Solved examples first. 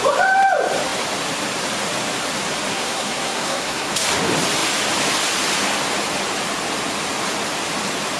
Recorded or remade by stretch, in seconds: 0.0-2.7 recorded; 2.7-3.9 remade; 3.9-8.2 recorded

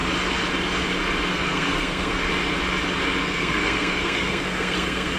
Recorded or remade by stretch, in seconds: 0.0-1.3 recorded; 1.3-2.2 remade; 2.2-3.2 recorded; 3.2-5.2 remade

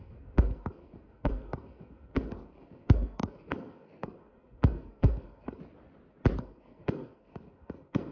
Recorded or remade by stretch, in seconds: 0.0-5.6 remade; 5.6-6.4 recorded; 6.4-8.1 remade

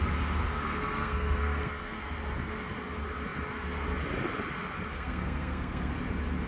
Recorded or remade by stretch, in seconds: 0.0-0.5 recorded; 0.5-2.0 remade; 2.0-4.9 recorded; 4.9-5.9 remade; 5.9-6.5 recorded

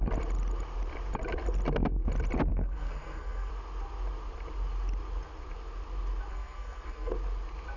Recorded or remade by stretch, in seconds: 0.0-2.5 recorded; 2.5-3.5 remade; 3.5-6.3 recorded; 6.3-7.1 remade; 7.1-7.8 recorded